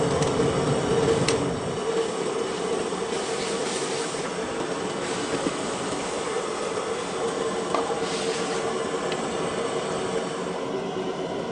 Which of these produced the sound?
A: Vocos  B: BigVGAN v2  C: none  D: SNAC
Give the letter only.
C